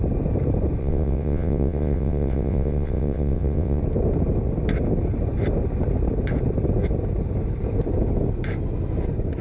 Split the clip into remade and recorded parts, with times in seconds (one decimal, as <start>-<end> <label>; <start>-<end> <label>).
0.0-0.8 recorded; 0.8-3.8 remade; 3.8-9.4 recorded